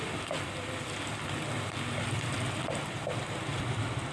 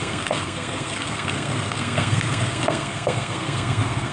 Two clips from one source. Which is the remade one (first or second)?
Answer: second